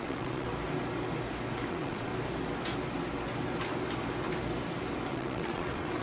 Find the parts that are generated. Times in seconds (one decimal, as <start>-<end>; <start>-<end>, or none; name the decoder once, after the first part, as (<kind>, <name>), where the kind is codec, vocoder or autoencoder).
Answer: 0.0-0.5 (vocoder, WaveNeXt); 1.7-2.1; 5.1-6.0